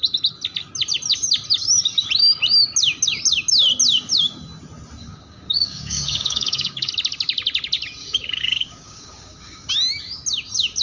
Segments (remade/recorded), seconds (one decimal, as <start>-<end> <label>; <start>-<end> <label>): 0.0-5.0 recorded; 5.0-6.9 remade; 6.9-8.0 recorded; 8.0-9.7 remade; 9.7-10.8 recorded